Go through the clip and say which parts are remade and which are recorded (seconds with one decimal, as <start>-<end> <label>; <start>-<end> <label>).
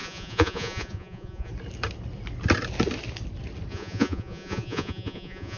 0.0-1.5 remade; 1.5-3.7 recorded; 3.7-5.6 remade